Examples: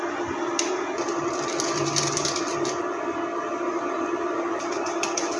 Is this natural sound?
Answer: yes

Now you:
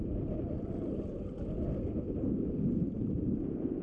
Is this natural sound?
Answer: yes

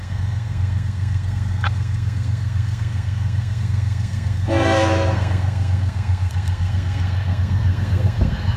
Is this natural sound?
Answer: no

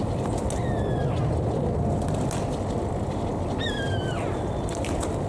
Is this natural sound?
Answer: yes